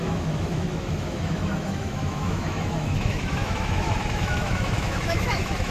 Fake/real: fake